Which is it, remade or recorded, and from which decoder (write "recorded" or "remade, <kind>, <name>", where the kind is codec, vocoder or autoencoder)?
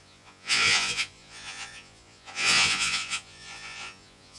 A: remade, vocoder, Vocos